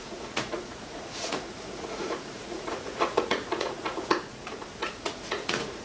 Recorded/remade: remade